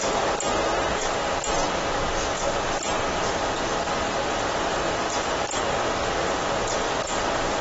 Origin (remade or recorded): recorded